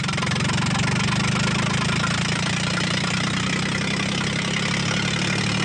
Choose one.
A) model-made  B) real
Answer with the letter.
B